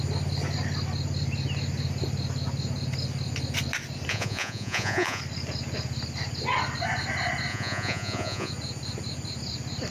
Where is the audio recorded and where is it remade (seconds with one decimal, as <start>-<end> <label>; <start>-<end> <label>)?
0.0-4.1 recorded; 4.1-5.2 remade; 5.2-7.5 recorded; 7.5-8.5 remade; 8.5-9.9 recorded